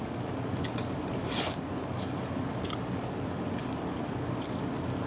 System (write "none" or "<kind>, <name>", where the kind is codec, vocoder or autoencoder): none